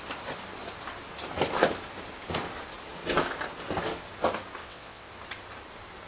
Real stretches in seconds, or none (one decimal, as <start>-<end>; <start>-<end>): 0.0-4.6; 5.1-6.1